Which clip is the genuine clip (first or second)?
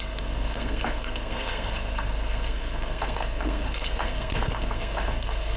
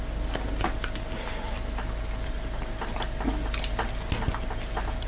second